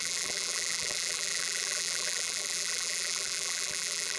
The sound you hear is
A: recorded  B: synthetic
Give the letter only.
B